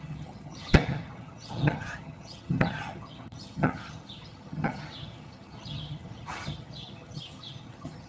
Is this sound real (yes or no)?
no